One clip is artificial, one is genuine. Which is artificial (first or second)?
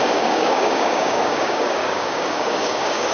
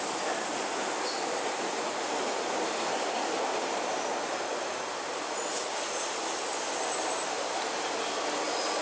first